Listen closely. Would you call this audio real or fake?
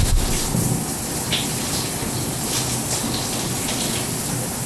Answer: real